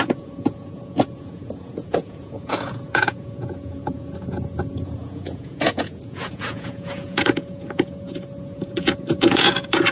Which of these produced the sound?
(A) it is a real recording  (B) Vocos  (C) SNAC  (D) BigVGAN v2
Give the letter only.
B